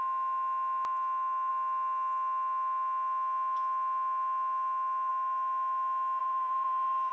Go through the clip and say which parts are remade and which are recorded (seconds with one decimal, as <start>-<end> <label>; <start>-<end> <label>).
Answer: 0.0-6.2 recorded; 6.2-7.1 remade